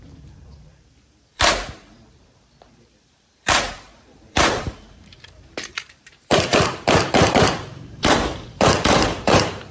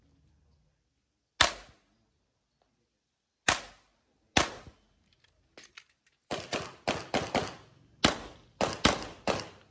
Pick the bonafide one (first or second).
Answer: second